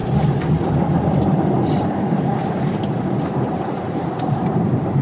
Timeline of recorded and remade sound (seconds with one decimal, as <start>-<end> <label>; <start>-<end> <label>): 0.0-5.0 recorded